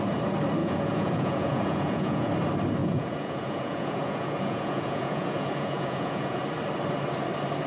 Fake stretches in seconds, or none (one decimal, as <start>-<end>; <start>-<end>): 0.6-2.3; 2.8-6.4